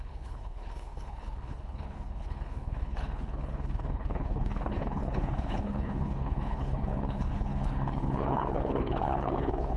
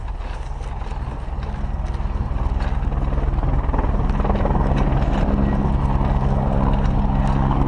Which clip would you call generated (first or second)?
first